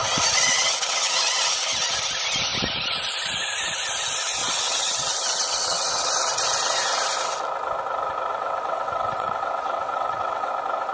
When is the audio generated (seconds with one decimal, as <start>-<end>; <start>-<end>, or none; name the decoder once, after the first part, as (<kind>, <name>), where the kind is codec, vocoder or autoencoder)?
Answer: 0.0-1.9 (vocoder, WaveNeXt); 4.4-6.1; 8.3-10.5